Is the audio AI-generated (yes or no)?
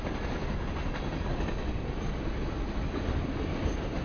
no